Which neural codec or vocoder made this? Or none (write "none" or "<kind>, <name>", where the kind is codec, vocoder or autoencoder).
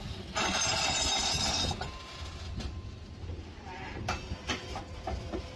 none